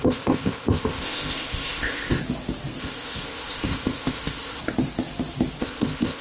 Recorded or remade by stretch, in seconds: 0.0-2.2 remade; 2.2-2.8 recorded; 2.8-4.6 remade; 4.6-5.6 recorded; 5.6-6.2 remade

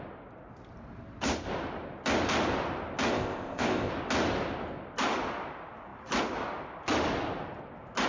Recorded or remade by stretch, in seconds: 0.0-3.1 recorded; 3.1-3.9 remade; 3.9-8.1 recorded

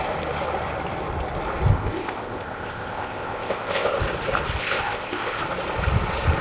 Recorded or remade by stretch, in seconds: 0.0-1.7 recorded; 1.7-4.0 remade; 4.0-4.6 recorded; 4.6-5.4 remade; 5.4-6.4 recorded

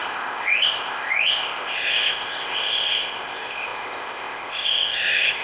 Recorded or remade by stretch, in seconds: 0.0-5.4 remade

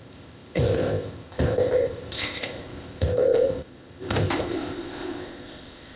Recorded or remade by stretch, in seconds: 0.0-6.0 remade

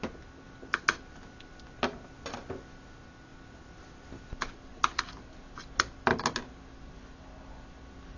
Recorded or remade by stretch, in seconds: 0.0-8.2 recorded

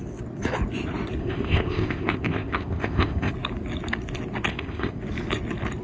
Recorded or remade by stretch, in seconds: 0.0-1.2 recorded; 1.2-3.3 remade; 3.3-4.5 recorded; 4.5-5.0 remade; 5.0-5.8 recorded

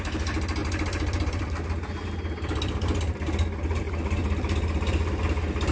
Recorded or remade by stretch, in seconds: 0.0-5.7 recorded